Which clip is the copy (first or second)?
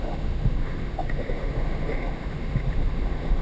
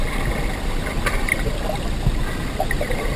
first